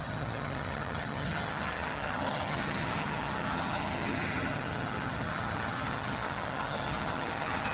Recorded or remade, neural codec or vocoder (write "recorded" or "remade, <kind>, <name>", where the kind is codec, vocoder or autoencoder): remade, vocoder, HiFi-GAN